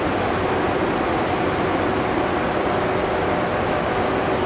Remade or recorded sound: recorded